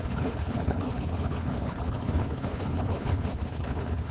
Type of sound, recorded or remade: remade